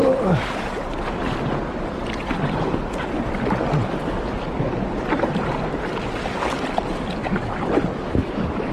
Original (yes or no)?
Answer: yes